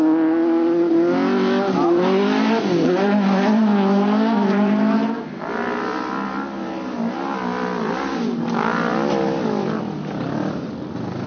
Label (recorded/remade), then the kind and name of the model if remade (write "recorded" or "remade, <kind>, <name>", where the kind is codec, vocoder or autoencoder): recorded